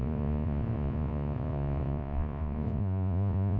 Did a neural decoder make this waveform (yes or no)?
yes